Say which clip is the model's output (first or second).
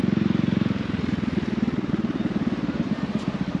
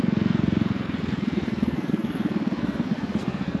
second